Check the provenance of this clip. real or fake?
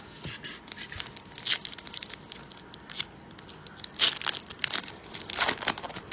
real